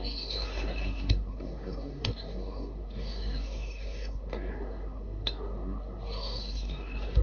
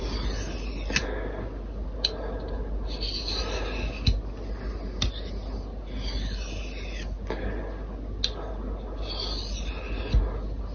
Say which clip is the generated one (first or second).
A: first